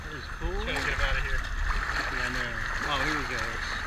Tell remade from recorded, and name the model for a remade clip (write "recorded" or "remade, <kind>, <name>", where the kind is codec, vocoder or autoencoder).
recorded